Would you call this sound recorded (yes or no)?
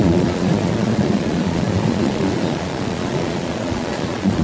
no